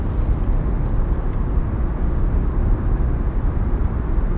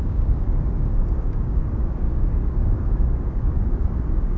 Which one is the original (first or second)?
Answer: first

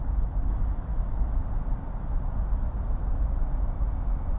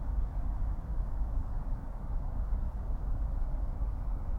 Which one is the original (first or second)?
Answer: first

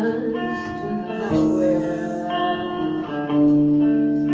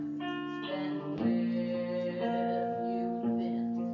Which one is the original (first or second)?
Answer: second